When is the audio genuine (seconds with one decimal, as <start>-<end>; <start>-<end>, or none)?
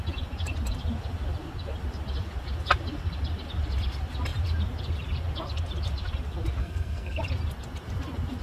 0.0-6.6; 7.2-8.4